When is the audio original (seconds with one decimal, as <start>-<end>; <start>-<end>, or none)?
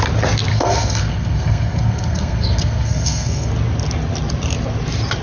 0.0-0.5; 3.5-5.2